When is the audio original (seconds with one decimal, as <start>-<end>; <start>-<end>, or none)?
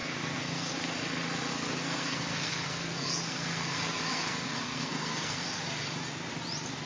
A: 0.7-1.5; 5.6-6.9